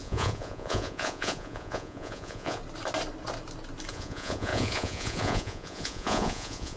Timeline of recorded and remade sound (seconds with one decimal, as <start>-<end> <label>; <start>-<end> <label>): 0.0-2.6 remade; 2.6-3.9 recorded; 3.9-6.8 remade